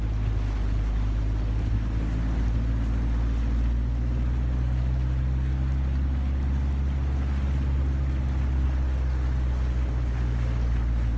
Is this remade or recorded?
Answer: recorded